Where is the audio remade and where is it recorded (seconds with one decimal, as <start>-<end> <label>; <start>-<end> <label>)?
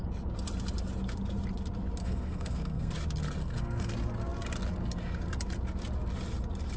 0.0-2.0 recorded; 2.0-2.9 remade; 2.9-3.4 recorded; 3.4-3.9 remade; 3.9-6.8 recorded